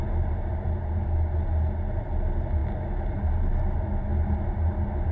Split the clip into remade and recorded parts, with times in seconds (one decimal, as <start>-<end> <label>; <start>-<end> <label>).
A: 0.0-0.7 remade; 0.7-5.1 recorded